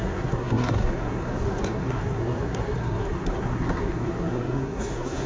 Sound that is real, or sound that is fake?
fake